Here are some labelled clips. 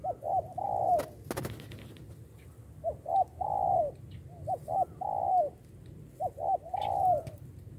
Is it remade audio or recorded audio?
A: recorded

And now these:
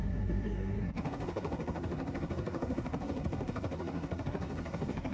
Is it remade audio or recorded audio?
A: remade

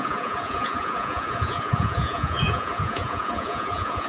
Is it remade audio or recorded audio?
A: remade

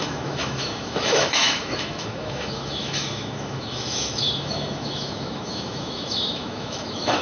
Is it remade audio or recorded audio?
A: remade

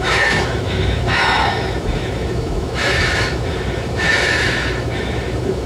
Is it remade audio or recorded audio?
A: remade